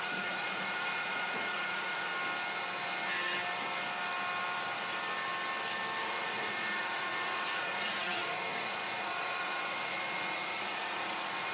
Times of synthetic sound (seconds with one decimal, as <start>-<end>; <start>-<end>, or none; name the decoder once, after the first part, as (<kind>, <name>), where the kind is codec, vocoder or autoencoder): 0.0-2.1 (vocoder, Vocos); 6.0-11.5